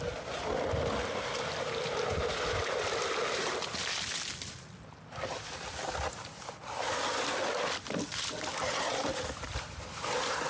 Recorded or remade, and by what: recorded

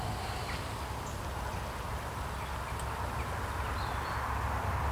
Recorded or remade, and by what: recorded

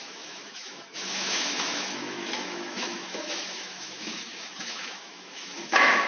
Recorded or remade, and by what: remade, autoencoder, DAC-VAE